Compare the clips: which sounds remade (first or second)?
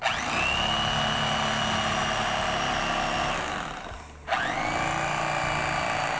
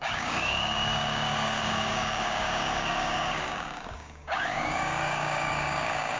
second